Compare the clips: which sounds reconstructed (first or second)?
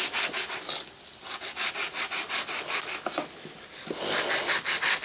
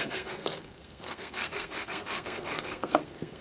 second